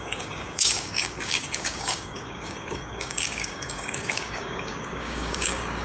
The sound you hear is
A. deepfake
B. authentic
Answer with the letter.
A